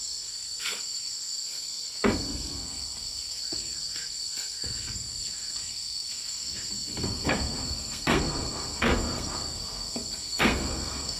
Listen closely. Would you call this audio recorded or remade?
remade